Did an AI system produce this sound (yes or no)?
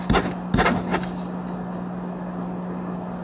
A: no